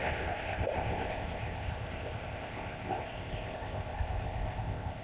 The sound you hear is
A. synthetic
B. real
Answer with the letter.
A